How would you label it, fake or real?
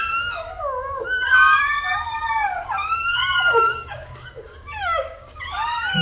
fake